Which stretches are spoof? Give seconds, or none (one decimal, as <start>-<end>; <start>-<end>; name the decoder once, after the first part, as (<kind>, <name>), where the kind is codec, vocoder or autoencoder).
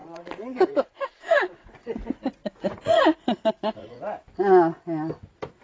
0.0-1.8 (vocoder, Vocos); 2.4-4.0